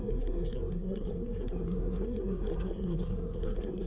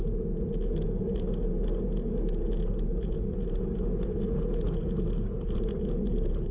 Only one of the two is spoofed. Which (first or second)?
first